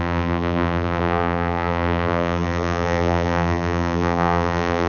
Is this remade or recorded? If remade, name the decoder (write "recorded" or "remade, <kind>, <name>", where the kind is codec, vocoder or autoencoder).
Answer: remade, vocoder, BigVGAN v2